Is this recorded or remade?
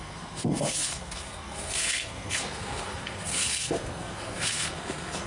remade